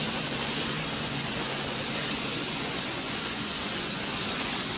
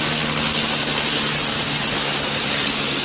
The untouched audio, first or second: second